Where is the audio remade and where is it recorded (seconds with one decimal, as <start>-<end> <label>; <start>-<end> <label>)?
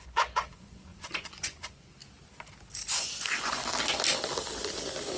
0.0-2.0 remade; 2.0-2.9 recorded; 2.9-3.6 remade; 3.6-5.2 recorded